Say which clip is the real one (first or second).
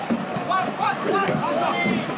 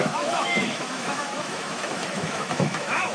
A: first